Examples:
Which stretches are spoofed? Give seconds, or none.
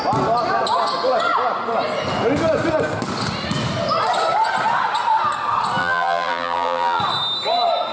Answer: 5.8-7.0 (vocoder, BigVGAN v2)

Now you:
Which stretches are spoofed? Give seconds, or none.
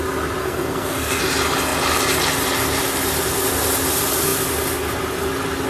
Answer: 0.4-1.2 (codec, SNAC)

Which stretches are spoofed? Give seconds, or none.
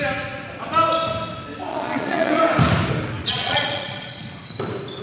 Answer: 1.7-2.4 (vocoder, Vocos); 3.2-4.2